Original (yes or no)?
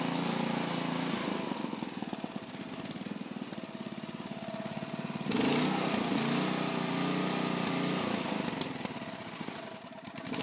yes